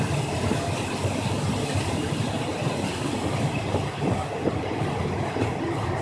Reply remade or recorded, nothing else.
recorded